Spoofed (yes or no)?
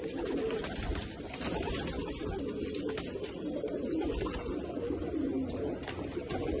no